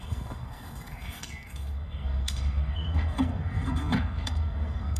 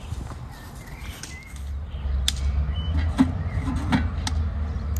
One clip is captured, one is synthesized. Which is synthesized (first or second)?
first